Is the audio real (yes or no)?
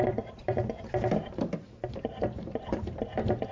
no